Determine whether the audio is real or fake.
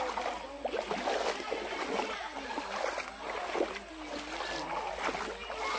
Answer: real